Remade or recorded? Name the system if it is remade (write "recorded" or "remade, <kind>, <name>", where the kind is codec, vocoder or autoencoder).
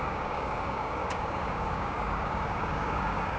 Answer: remade, codec, DAC